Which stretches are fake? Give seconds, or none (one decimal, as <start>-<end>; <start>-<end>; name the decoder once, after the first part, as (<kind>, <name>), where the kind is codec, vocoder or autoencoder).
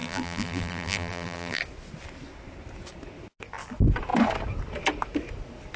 0.0-1.6 (vocoder, BigVGAN v2)